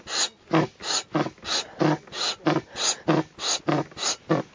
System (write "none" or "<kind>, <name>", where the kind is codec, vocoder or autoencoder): none